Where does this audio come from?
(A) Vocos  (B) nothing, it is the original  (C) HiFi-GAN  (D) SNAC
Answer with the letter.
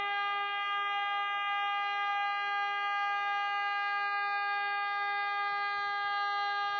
B